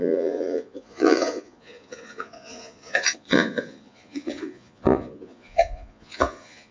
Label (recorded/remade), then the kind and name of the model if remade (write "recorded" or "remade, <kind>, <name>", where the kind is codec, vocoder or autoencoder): remade, vocoder, Vocos